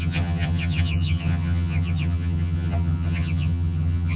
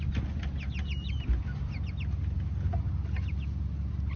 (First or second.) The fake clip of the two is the first